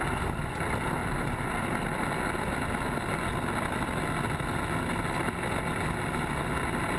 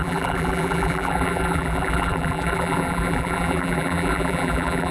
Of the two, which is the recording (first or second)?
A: first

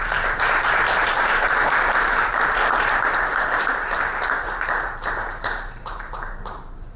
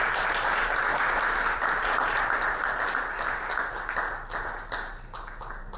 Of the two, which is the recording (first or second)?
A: second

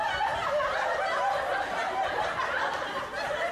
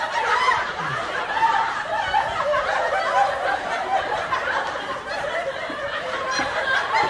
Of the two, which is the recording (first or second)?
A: first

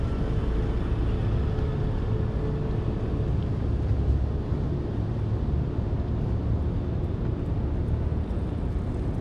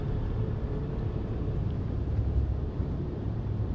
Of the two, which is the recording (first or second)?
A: first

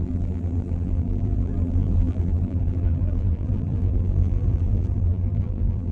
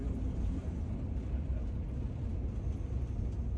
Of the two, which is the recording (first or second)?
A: second